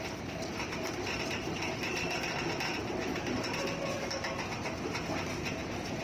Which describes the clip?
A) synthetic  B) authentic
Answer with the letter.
B